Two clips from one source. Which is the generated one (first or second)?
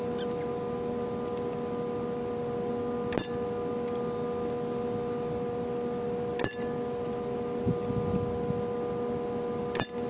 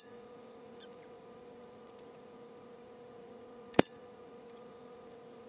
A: second